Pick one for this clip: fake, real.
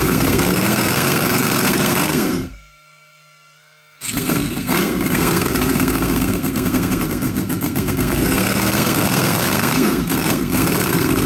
fake